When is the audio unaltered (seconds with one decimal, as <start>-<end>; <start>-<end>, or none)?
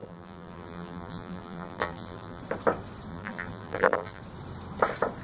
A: 2.4-3.1; 4.2-5.2